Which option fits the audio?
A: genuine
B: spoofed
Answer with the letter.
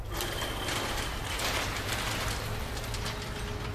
A